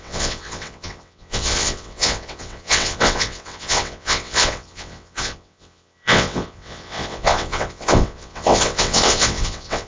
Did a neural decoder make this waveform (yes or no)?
yes